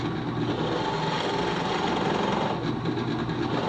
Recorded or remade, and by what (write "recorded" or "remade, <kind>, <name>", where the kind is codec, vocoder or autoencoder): recorded